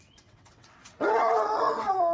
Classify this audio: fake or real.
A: fake